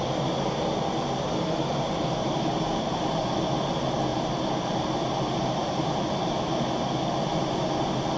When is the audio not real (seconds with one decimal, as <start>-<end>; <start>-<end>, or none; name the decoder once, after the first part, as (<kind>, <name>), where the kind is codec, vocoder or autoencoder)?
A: 0.0-3.2 (vocoder, BigVGAN v2); 4.1-6.4